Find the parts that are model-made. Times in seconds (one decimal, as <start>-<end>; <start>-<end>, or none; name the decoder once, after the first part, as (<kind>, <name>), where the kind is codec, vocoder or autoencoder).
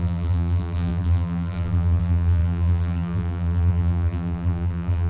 0.0-5.1 (vocoder, BigVGAN v2)